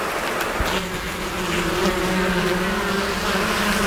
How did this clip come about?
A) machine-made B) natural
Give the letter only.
B